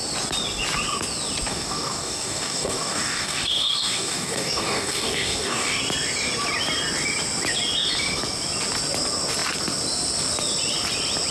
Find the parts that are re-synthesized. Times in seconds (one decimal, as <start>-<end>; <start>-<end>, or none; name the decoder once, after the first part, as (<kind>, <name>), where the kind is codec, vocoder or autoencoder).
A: 1.5-5.8 (codec, DAC)